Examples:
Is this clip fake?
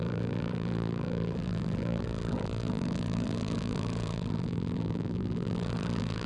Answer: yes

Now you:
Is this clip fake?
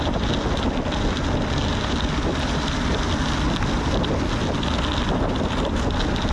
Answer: no